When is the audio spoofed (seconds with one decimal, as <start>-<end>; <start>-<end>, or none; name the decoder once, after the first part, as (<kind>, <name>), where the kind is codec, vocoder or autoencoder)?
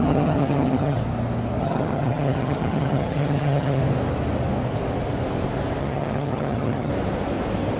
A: 0.0-1.0 (vocoder, HiFi-GAN); 1.6-3.8; 5.8-6.9